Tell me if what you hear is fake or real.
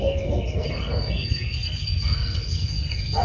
fake